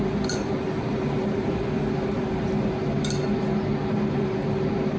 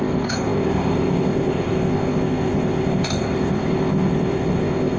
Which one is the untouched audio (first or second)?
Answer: first